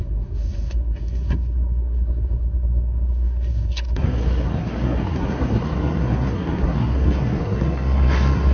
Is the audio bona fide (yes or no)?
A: no